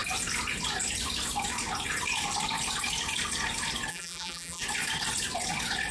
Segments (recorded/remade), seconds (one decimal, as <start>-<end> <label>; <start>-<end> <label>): 0.0-3.9 recorded; 3.9-4.6 remade; 4.6-5.9 recorded

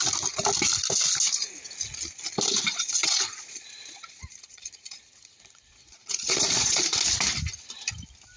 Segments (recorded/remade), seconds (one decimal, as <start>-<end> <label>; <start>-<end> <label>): 0.0-2.7 recorded; 2.7-6.8 remade; 6.8-8.4 recorded